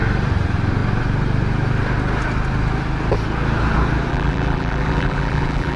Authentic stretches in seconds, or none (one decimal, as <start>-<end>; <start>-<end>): 0.0-4.1